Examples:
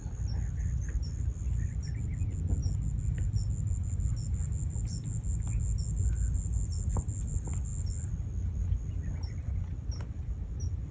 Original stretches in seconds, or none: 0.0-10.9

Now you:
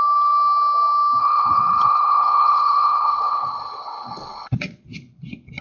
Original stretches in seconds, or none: 0.0-1.2; 4.6-5.6

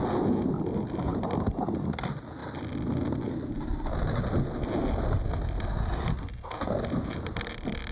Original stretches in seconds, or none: 0.0-7.9